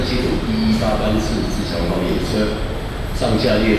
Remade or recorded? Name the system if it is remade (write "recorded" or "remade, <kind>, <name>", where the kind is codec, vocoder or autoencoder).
recorded